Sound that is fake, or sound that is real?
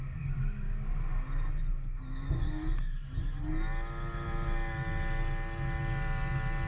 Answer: real